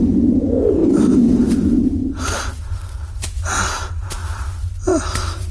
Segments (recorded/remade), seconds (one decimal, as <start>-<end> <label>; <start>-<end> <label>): 0.0-5.5 recorded